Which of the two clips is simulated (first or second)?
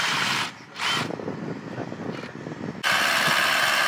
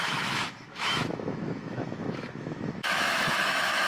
second